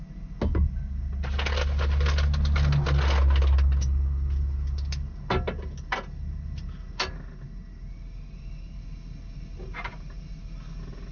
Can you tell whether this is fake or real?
real